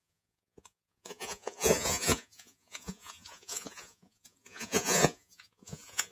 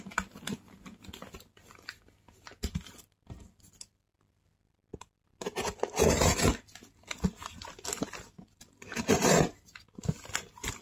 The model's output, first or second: first